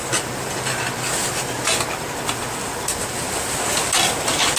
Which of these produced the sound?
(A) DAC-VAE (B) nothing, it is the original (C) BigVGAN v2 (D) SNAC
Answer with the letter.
B